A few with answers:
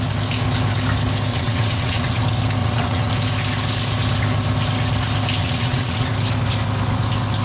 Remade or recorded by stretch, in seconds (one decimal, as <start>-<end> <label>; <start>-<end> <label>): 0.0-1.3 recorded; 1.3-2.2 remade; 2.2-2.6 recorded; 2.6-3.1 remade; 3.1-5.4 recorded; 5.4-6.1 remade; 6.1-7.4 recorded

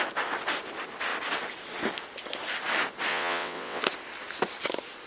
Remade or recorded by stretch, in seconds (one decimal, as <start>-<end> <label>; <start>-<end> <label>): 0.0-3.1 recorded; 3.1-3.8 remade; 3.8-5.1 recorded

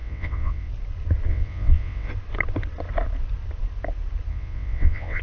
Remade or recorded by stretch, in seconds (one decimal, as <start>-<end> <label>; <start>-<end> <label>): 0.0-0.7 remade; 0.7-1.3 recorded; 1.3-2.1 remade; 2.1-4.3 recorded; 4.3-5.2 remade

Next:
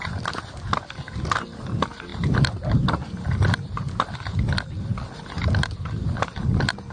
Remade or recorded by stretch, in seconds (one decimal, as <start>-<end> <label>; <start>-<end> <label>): 0.0-6.9 recorded